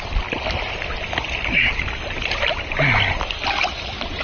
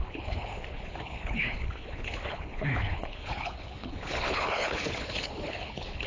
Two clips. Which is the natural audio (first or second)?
first